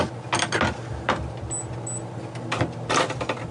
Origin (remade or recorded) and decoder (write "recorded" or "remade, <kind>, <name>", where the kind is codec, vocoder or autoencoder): recorded